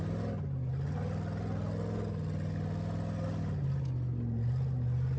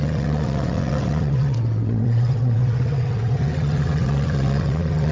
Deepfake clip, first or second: second